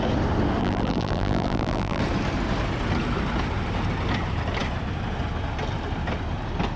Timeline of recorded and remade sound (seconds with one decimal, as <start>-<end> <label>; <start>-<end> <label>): 0.0-0.6 recorded; 0.6-2.0 remade; 2.0-6.8 recorded